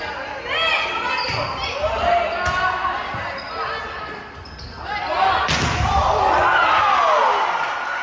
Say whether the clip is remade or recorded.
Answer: recorded